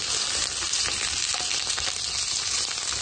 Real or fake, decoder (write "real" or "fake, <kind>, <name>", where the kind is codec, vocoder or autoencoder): real